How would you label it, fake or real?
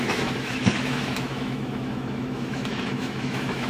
fake